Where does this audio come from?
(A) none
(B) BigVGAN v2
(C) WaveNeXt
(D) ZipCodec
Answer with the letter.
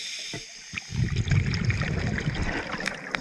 A